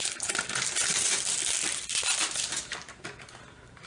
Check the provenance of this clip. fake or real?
real